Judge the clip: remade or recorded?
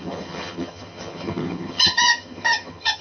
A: remade